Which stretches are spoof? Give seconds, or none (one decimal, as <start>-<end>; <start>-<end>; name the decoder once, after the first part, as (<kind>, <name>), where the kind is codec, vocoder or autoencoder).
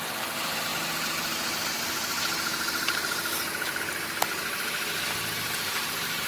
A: none